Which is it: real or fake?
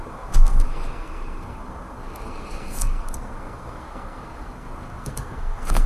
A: fake